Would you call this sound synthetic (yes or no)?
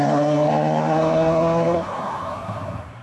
yes